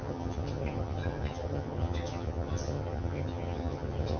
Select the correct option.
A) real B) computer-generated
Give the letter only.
B